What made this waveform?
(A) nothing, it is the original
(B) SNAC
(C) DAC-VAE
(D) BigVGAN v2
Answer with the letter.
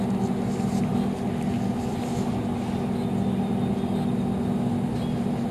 A